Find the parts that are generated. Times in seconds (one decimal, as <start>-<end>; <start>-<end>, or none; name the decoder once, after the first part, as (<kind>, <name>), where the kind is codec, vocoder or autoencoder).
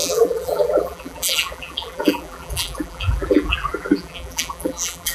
0.0-5.1 (vocoder, BigVGAN v2)